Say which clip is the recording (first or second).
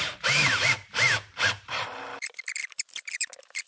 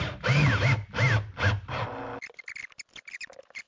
second